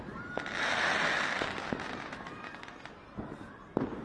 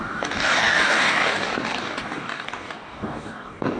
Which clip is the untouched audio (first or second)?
first